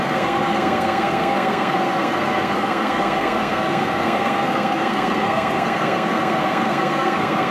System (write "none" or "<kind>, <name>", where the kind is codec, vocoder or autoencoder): codec, SNAC